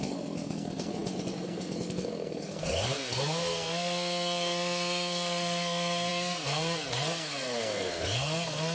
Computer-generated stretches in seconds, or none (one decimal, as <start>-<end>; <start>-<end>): 0.0-8.7